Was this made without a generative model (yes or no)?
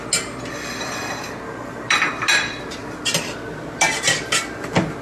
yes